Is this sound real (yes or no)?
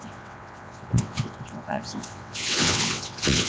no